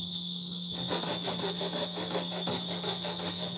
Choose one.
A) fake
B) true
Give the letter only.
A